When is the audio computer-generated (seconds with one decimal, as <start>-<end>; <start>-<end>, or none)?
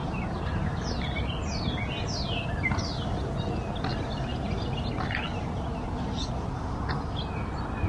0.0-0.9